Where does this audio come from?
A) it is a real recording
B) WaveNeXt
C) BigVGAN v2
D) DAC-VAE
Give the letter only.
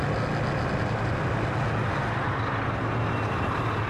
A